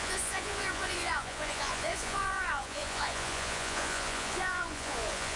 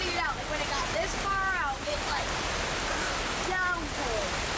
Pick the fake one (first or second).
first